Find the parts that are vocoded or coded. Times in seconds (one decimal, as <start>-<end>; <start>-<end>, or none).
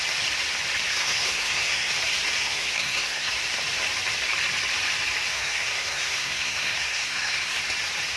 0.9-1.9; 2.4-3.3; 5.3-7.6